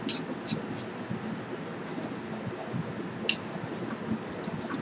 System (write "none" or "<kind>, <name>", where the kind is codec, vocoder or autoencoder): none